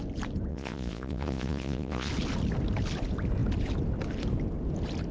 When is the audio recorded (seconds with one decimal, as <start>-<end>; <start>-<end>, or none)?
0.0-0.5; 2.1-5.1